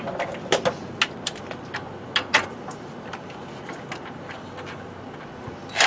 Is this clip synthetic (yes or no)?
no